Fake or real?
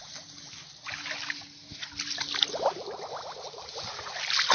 real